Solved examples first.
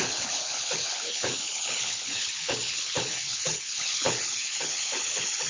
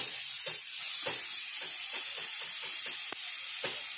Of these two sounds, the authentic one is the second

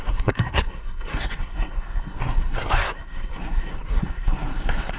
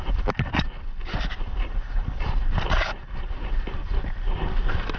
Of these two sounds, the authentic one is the second